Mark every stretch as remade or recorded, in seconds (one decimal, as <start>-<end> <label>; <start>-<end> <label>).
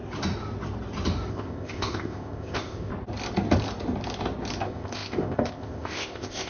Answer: 0.0-1.3 recorded; 1.3-2.9 remade; 2.9-4.6 recorded; 4.6-6.5 remade